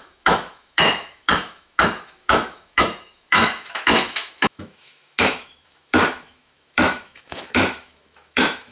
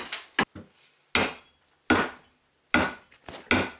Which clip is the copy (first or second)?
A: first